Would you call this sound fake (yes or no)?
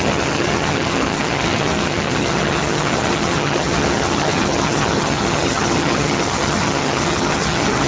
yes